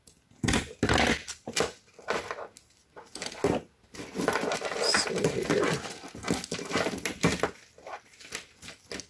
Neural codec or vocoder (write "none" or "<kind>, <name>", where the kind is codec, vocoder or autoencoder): none